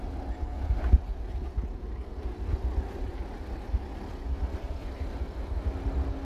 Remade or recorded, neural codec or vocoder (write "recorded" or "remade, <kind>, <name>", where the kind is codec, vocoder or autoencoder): recorded